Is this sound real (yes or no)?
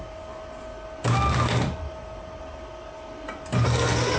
yes